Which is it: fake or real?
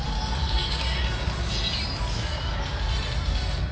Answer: real